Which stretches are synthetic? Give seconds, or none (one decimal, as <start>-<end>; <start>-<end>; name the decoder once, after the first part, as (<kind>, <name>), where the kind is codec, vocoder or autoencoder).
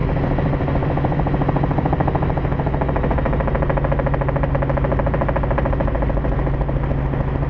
none